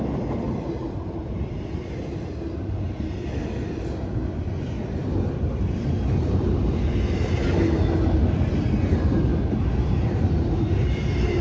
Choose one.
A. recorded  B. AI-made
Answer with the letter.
A